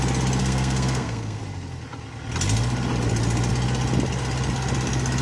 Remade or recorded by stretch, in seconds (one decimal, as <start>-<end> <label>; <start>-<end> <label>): 0.0-0.4 recorded; 0.4-1.4 remade; 1.4-5.2 recorded